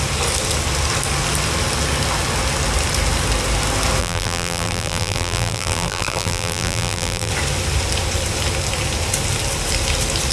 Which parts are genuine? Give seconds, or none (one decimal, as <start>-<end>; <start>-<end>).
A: 0.0-4.0; 7.3-10.3